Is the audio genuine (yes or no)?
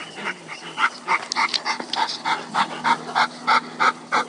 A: yes